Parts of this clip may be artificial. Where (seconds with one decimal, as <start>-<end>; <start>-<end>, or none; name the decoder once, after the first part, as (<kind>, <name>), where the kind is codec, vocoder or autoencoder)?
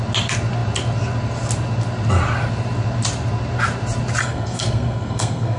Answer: 4.2-5.6 (codec, SNAC)